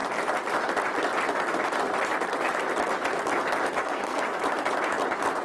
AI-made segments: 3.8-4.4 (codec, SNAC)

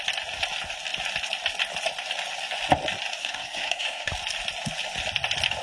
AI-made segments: 3.2-4.1 (codec, SNAC)

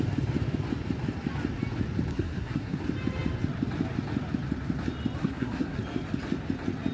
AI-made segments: 2.1-2.8 (codec, SNAC); 5.2-5.8

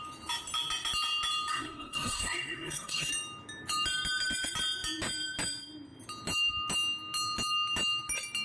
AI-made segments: 1.5-3.1 (codec, SNAC)

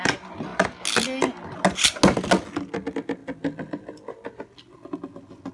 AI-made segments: none